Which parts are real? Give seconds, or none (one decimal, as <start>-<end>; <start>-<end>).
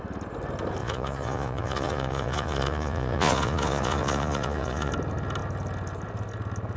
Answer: 0.0-0.8; 4.9-6.8